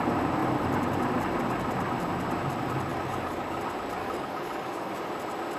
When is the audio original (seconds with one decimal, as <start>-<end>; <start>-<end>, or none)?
0.0-2.9; 3.6-4.0; 5.1-5.6